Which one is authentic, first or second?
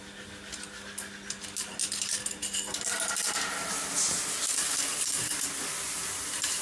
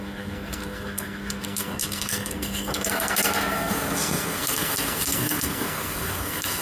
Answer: first